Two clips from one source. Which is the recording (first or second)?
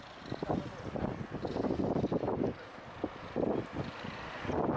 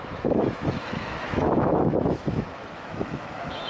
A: first